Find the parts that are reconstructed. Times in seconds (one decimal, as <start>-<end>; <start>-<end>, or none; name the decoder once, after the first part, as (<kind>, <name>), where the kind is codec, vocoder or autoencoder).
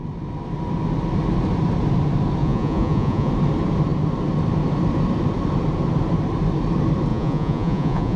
2.4-3.3 (vocoder, Vocos); 7.1-8.2